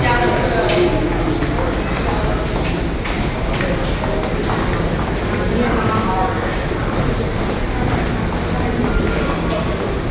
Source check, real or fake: real